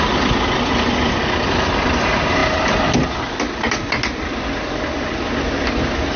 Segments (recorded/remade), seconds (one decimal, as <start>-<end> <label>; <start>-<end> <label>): 0.0-6.2 recorded

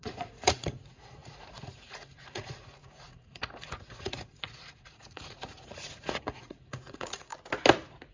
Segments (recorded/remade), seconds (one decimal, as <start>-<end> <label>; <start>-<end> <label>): 0.0-7.3 remade; 7.3-8.1 recorded